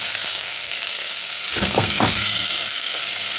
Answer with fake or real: fake